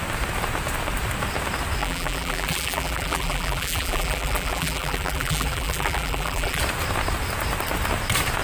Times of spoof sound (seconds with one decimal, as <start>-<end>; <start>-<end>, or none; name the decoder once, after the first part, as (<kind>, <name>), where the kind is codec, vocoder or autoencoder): 1.8-6.6 (vocoder, BigVGAN v2)